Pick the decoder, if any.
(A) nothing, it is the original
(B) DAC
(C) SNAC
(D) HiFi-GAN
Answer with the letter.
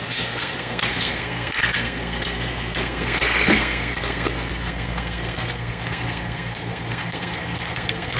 C